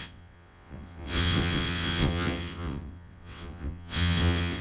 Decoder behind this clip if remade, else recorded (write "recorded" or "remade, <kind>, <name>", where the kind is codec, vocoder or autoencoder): remade, vocoder, WaveNeXt